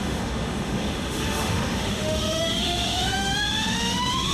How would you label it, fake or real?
fake